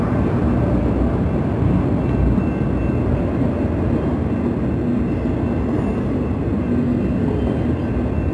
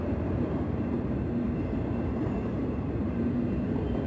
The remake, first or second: second